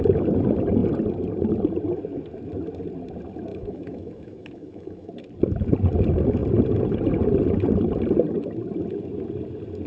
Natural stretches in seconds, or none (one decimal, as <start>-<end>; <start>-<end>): 0.0-3.5; 5.1-9.9